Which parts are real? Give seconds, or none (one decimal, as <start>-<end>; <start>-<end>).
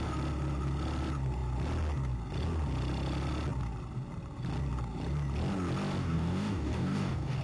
0.0-6.0